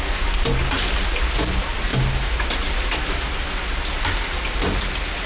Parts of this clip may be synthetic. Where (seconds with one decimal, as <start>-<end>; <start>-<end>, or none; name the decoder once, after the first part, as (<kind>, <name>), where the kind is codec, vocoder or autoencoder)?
none